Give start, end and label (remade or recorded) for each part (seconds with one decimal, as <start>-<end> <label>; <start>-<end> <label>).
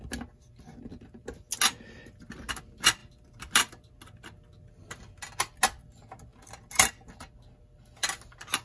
0.0-3.0 recorded; 3.0-3.9 remade; 3.9-8.6 recorded